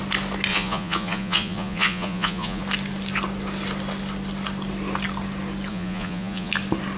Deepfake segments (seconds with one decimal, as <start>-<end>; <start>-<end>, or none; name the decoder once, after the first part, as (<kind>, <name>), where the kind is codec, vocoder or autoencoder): 0.5-2.6 (vocoder, Vocos); 5.7-6.5